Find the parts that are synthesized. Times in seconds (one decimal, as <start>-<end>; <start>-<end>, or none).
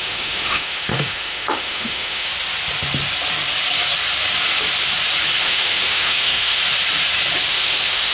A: 0.0-2.3; 5.4-6.6; 7.5-8.1